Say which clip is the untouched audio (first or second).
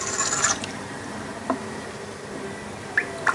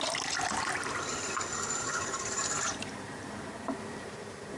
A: first